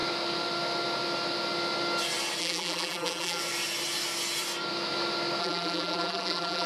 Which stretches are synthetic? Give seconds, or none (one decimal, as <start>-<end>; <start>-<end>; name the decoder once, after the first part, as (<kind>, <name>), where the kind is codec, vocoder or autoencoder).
2.4-3.4 (vocoder, BigVGAN v2); 5.4-6.7